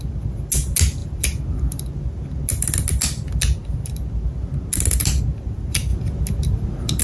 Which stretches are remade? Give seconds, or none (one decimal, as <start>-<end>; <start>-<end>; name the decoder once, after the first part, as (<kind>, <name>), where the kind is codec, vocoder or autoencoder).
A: none